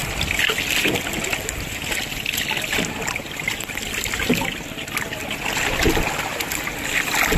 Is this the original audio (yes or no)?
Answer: yes